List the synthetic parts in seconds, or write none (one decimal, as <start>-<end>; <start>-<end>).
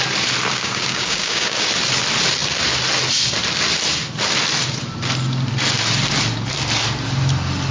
0.5-1.7